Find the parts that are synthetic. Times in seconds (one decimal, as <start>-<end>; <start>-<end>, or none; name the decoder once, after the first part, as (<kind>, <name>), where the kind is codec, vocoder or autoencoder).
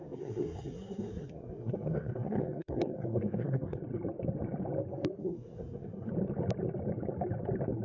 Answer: 0.0-3.8 (codec, SNAC); 5.2-6.1